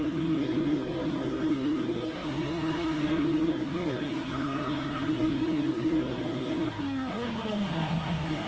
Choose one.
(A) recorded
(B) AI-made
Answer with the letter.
B